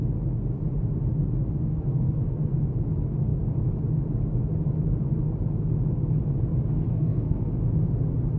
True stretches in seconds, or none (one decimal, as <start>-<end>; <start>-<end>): 0.0-1.7; 2.6-6.9; 7.5-8.4